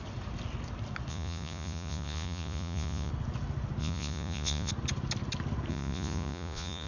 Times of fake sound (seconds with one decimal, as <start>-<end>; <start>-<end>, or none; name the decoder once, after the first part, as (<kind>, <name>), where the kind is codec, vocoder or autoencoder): 1.1-3.1 (vocoder, Vocos); 3.8-4.7; 5.7-6.9